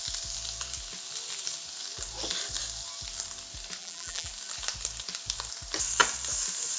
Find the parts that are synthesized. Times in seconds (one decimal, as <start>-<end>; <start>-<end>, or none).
3.8-4.3

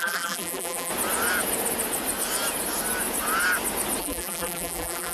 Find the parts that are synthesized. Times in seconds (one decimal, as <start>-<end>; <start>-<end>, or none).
0.0-0.9; 4.0-5.1

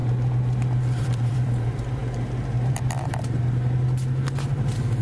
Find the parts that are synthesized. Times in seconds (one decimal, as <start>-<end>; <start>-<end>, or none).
1.0-2.0